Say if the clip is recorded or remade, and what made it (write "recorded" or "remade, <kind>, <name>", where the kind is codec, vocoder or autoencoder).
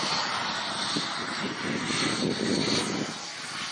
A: recorded